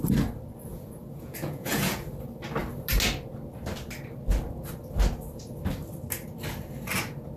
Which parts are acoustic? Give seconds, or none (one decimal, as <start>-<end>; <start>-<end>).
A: 0.0-0.7; 2.1-7.4